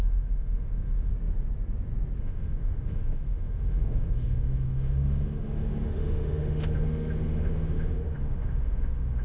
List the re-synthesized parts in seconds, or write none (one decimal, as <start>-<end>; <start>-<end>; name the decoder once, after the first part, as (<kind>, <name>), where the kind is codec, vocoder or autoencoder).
0.0-1.1 (autoencoder, DAC-VAE); 2.2-9.2